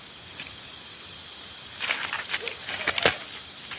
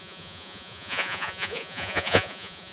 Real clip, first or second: first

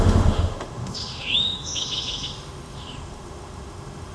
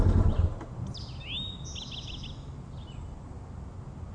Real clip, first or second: second